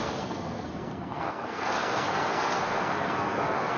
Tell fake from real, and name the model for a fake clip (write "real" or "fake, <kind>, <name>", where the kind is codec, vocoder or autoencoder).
fake, codec, SNAC